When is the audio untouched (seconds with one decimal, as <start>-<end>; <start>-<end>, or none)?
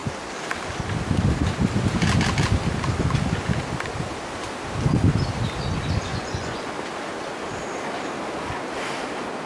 0.0-6.1; 6.7-9.5